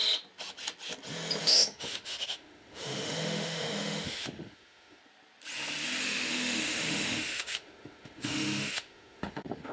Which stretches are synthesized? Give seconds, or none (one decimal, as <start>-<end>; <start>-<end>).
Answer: 1.4-5.0; 6.0-9.7